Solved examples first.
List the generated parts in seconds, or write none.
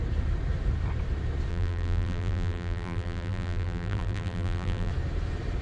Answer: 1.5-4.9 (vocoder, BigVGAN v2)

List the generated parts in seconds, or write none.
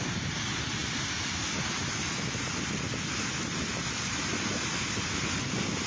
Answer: none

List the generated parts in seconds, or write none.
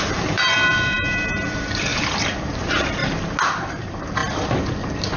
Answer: 0.0-1.9 (vocoder, BigVGAN v2); 2.4-3.0; 3.7-4.2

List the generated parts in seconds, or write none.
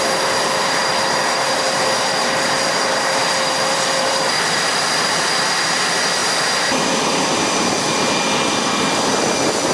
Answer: 0.6-5.3 (vocoder, BigVGAN v2)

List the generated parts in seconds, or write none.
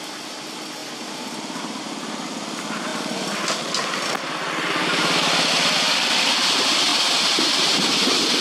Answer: none